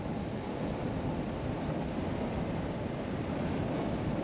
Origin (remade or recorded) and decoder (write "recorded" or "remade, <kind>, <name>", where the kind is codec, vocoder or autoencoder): recorded